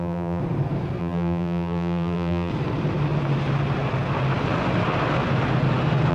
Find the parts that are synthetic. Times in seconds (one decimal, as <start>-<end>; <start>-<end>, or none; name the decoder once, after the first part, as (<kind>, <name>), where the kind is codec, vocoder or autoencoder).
0.0-0.4 (vocoder, BigVGAN v2); 1.0-2.5